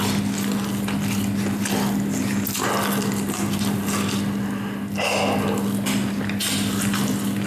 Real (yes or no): yes